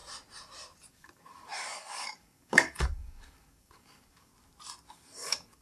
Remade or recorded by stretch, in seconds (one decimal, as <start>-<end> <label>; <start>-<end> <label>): 0.0-0.9 recorded; 0.9-4.3 remade; 4.3-4.9 recorded; 4.9-5.6 remade